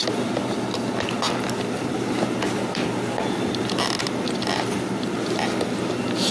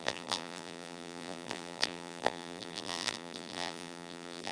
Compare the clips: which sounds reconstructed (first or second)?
second